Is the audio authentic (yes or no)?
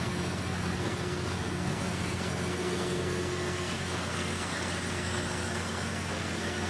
no